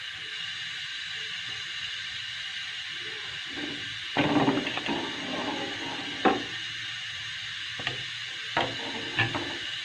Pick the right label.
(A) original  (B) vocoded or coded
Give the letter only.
A